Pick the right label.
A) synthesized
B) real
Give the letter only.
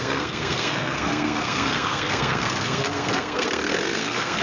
A